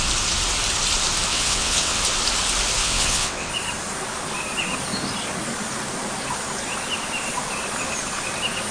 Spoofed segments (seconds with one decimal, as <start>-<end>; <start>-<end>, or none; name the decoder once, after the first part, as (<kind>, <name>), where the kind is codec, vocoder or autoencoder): 1.3-2.0 (vocoder, WaveNeXt); 2.8-3.5